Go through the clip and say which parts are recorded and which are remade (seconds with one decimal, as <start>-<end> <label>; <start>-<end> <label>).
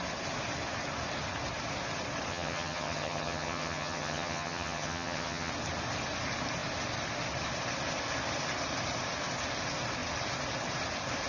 0.0-2.3 recorded; 2.3-5.5 remade; 5.5-11.3 recorded